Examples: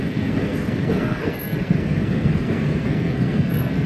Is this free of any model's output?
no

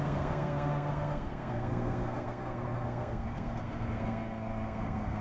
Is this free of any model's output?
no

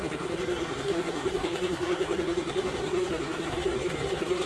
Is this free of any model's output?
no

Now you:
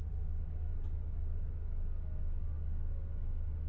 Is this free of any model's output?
yes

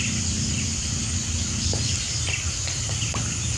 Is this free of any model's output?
yes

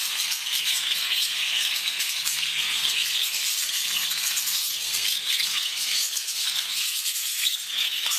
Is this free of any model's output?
no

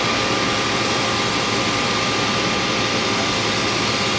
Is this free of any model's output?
yes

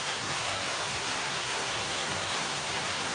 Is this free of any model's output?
no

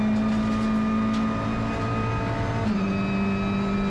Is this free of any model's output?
yes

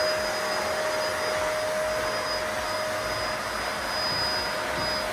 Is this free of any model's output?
yes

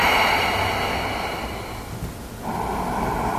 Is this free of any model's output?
yes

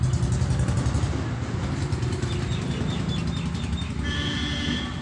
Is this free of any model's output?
yes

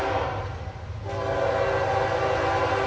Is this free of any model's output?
yes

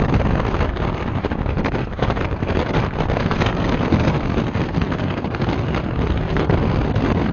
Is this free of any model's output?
no